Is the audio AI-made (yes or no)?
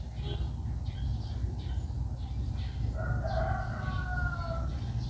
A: no